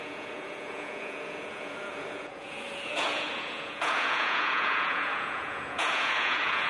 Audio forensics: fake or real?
fake